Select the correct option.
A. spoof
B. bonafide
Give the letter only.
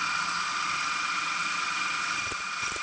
B